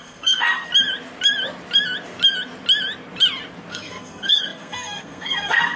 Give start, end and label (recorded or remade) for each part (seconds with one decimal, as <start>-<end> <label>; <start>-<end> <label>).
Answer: 0.0-0.7 remade; 0.7-3.7 recorded; 3.7-5.8 remade